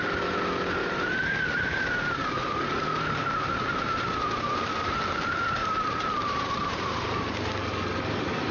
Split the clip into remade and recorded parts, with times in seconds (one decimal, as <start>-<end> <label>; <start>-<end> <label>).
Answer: 0.0-0.8 recorded; 0.8-2.5 remade; 2.5-5.6 recorded; 5.6-7.7 remade; 7.7-8.5 recorded